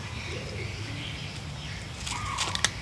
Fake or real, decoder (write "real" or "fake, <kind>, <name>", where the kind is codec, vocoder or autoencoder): real